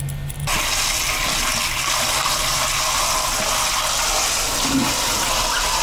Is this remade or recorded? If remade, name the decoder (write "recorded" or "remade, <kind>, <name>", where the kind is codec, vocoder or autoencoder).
recorded